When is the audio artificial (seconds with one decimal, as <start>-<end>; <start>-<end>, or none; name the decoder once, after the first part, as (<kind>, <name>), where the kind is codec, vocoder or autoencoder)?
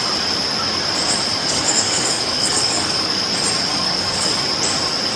1.4-3.2 (codec, DAC); 3.7-4.3